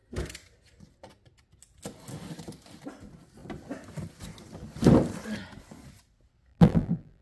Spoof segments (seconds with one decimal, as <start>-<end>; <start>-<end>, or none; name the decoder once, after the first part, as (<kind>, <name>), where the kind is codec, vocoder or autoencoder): 6.5-7.2 (vocoder, BigVGAN v2)